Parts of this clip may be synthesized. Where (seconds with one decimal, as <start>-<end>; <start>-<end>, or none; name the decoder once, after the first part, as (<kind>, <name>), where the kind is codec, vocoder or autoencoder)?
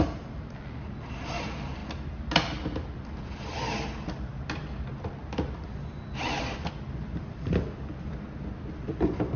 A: none